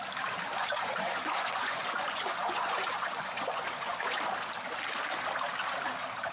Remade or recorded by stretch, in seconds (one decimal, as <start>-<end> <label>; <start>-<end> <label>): 0.0-0.5 recorded; 0.5-4.3 remade; 4.3-6.3 recorded